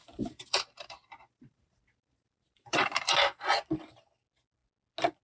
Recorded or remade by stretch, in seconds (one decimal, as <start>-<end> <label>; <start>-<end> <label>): 0.0-3.1 remade; 3.1-5.2 recorded